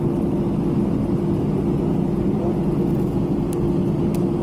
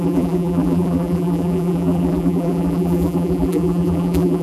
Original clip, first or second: first